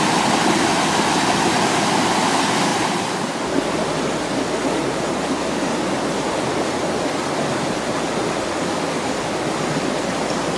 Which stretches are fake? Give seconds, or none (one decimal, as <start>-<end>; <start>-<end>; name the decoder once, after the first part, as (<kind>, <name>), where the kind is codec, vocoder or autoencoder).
2.7-3.4 (vocoder, BigVGAN v2); 4.8-5.5